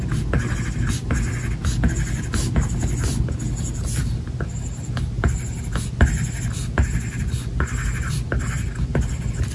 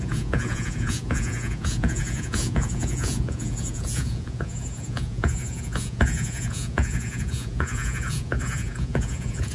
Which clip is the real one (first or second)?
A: first